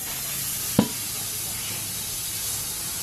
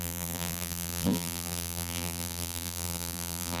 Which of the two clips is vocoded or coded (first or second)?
second